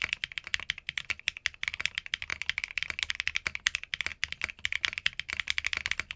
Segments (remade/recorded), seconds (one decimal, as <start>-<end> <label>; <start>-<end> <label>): 0.0-6.2 recorded